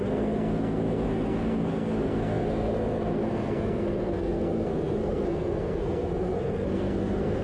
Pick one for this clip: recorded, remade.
remade